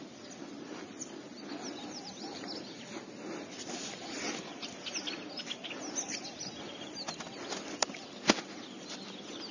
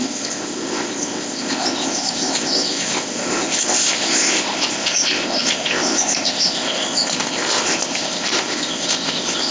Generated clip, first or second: second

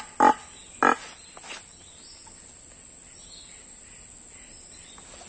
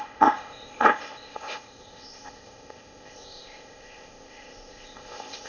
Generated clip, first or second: second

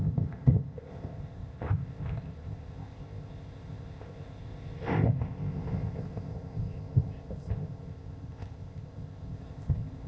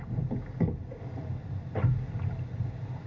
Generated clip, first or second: first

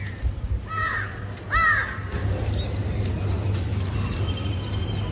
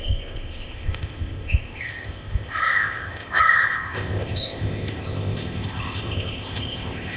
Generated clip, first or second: second